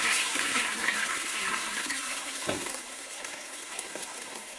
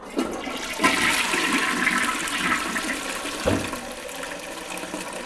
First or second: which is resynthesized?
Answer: first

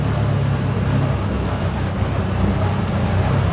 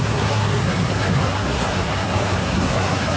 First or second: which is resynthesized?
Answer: second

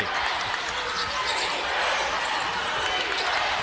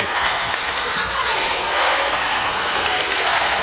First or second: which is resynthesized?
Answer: second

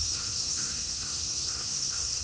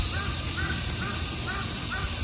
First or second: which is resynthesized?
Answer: first